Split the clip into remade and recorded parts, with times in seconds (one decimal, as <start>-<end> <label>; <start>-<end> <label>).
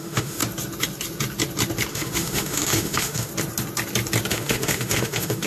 0.0-0.4 remade; 0.4-1.9 recorded; 1.9-3.3 remade; 3.3-4.3 recorded; 4.3-5.5 remade